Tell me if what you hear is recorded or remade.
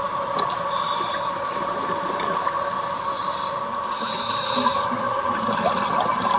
recorded